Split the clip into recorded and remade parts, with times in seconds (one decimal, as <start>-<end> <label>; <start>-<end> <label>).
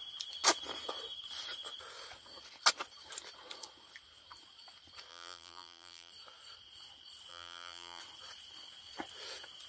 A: 0.0-5.1 recorded; 5.1-6.1 remade; 6.1-7.3 recorded; 7.3-8.0 remade; 8.0-9.7 recorded